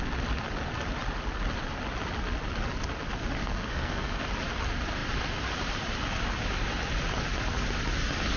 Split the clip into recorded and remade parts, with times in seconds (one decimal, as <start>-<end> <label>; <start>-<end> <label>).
0.0-3.4 recorded; 3.4-4.2 remade; 4.2-8.4 recorded